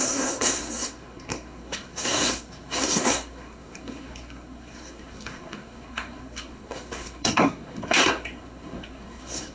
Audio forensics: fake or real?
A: fake